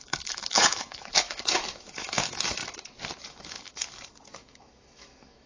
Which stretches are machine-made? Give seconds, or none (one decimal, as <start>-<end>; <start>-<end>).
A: 0.0-2.6; 3.2-5.5